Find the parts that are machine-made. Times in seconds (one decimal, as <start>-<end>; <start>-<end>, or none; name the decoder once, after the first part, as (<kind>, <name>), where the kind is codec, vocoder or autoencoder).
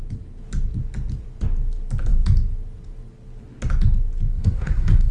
4.3-5.1 (codec, SNAC)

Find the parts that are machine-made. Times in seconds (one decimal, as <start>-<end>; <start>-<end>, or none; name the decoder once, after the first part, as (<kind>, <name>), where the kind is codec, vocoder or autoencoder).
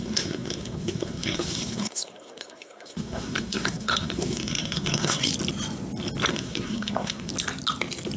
0.0-5.3 (codec, SNAC); 6.3-7.3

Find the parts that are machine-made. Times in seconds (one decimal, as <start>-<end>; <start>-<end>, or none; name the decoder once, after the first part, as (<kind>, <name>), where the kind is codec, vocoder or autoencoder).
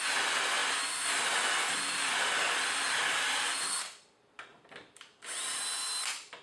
none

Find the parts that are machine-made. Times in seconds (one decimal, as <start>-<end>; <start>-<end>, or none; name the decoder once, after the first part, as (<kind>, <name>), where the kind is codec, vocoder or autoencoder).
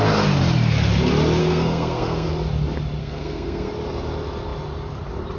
1.4-2.3 (codec, SNAC); 3.0-3.7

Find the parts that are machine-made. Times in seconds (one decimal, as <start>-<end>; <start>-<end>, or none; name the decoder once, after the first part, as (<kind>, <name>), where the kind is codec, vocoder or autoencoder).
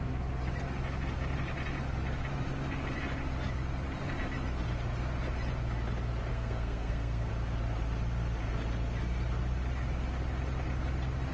6.3-7.3 (codec, SNAC)